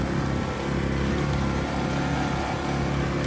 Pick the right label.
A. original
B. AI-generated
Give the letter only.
A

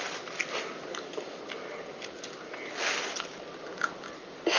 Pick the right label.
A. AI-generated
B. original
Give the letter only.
B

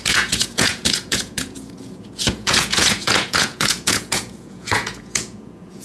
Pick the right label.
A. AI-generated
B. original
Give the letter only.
A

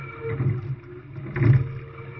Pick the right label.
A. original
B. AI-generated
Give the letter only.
A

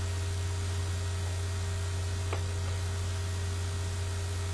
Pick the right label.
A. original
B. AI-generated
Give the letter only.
A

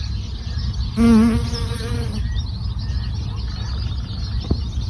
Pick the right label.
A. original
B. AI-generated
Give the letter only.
A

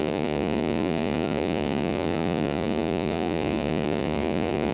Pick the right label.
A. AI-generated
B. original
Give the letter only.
A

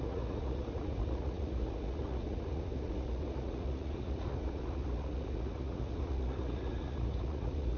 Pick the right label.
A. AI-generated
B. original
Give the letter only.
A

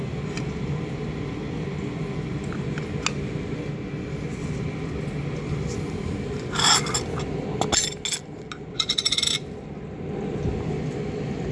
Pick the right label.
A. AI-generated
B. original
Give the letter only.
B